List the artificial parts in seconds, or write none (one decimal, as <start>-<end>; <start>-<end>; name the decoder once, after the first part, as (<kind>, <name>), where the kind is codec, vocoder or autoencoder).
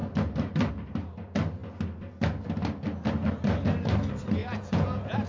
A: 4.4-5.3 (vocoder, Vocos)